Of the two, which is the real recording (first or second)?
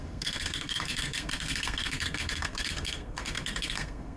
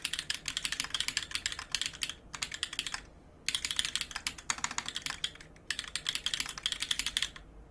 second